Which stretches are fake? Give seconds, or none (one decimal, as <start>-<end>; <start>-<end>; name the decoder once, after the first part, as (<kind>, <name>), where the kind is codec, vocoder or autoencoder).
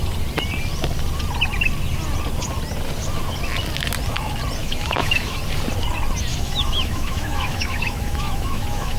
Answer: 4.6-5.4 (autoencoder, DAC-VAE); 6.3-9.0